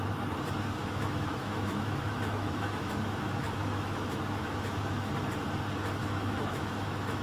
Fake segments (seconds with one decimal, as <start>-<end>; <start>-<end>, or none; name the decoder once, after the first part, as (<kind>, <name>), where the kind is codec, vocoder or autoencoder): 0.8-5.1 (autoencoder, DAC-VAE); 6.0-7.2